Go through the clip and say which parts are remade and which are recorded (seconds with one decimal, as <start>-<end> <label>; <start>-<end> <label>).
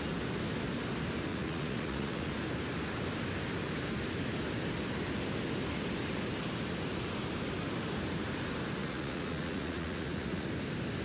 0.0-1.3 recorded; 1.3-2.3 remade; 2.3-8.8 recorded; 8.8-10.5 remade; 10.5-11.0 recorded